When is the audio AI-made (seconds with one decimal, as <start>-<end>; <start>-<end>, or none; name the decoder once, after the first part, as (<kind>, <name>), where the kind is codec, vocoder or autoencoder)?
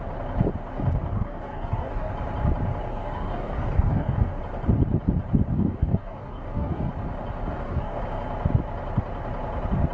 1.0-2.1 (codec, DAC); 2.9-4.4; 5.5-6.9; 7.5-8.0